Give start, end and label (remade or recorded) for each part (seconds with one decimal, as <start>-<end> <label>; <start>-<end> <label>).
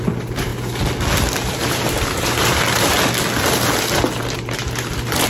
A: 0.0-0.5 remade; 0.5-1.5 recorded; 1.5-2.9 remade; 2.9-4.2 recorded; 4.2-5.3 remade